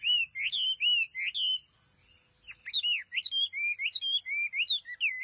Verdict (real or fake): real